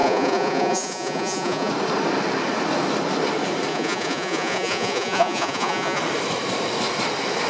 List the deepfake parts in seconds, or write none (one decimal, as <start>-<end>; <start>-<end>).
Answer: 0.0-1.7; 3.7-6.0